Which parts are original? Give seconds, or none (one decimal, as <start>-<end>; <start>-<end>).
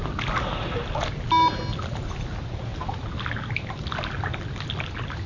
0.0-5.3